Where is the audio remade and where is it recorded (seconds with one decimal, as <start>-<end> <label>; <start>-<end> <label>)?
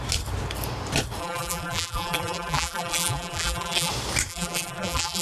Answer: 0.0-1.2 recorded; 1.2-3.9 remade; 3.9-4.3 recorded; 4.3-5.2 remade